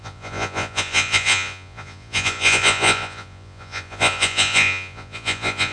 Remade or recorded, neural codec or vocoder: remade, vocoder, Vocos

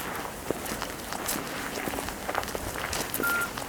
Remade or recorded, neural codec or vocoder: recorded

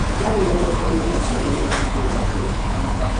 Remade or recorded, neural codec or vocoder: remade, codec, HILCodec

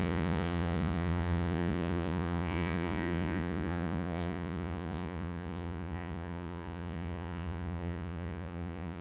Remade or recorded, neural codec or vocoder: remade, vocoder, Vocos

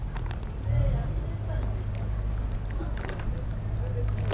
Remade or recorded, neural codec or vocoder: recorded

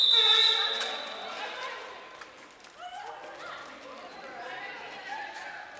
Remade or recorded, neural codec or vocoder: recorded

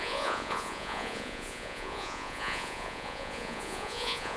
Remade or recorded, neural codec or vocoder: remade, vocoder, Vocos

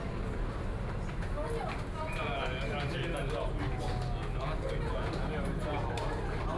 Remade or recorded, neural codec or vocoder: recorded